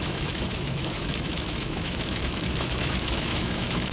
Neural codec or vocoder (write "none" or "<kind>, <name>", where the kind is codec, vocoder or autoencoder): autoencoder, DAC-VAE